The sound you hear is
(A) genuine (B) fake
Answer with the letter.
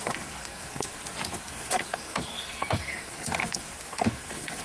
B